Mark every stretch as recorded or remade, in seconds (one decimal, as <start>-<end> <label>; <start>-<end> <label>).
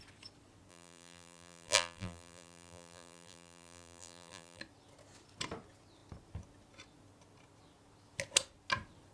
0.0-0.7 recorded; 0.7-4.6 remade; 4.6-9.1 recorded